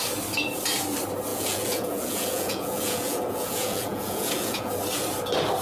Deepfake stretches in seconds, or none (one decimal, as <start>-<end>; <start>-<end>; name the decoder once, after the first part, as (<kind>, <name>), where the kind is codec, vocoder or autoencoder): 1.3-4.7 (vocoder, Vocos)

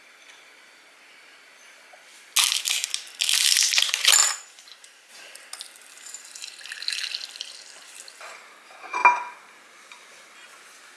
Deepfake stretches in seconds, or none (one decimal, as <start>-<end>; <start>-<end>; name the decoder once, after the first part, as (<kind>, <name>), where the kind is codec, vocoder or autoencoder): none

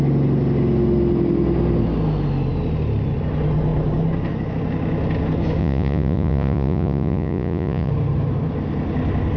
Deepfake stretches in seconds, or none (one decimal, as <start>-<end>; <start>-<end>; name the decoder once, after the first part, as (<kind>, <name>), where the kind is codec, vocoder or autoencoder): 5.6-7.9 (vocoder, Vocos)

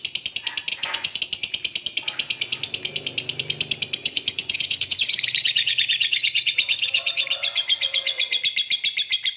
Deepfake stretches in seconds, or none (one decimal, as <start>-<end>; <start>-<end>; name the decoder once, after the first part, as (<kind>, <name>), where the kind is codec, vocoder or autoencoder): 0.7-1.2 (vocoder, Vocos); 4.0-8.4

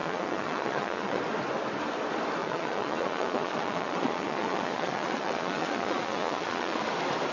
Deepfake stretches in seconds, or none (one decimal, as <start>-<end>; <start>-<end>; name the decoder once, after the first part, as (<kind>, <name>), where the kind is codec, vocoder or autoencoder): 0.0-1.2 (vocoder, Vocos); 2.4-6.8

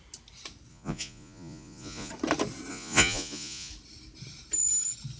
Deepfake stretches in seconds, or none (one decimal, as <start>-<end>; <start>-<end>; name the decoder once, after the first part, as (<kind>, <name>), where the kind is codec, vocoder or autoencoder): 0.7-2.1 (vocoder, Vocos); 2.7-3.7